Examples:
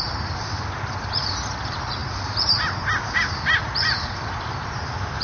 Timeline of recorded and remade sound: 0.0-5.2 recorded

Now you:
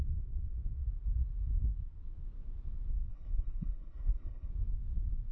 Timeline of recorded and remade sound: 0.0-3.1 recorded; 3.1-4.5 remade; 4.5-5.3 recorded

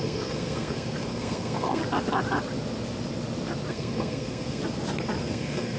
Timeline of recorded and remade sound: 0.0-1.8 remade; 1.8-3.7 recorded; 3.7-4.6 remade; 4.6-5.2 recorded; 5.2-5.8 remade

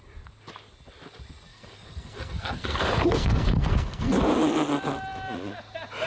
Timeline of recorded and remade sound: 0.0-1.5 recorded; 1.5-4.2 remade; 4.2-6.1 recorded

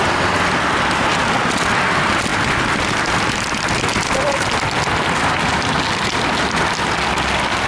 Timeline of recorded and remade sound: 0.0-7.7 recorded

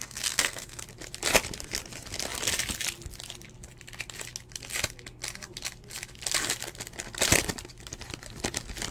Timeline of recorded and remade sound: 0.0-0.8 remade; 0.8-8.9 recorded

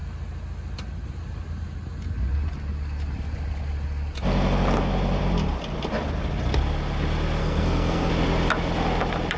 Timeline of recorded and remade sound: 0.0-7.4 recorded; 7.4-8.1 remade; 8.1-9.4 recorded

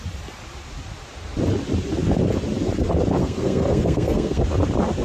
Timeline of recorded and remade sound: 0.0-3.2 recorded; 3.2-4.4 remade; 4.4-5.0 recorded